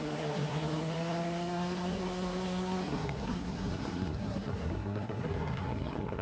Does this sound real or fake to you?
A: fake